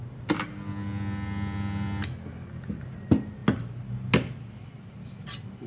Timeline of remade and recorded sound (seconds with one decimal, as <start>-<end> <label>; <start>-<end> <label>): 0.0-5.7 recorded